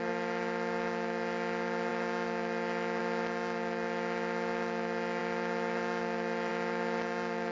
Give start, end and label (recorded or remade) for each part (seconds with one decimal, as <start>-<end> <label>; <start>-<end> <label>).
0.0-7.5 recorded